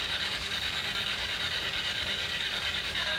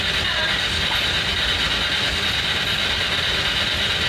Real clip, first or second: second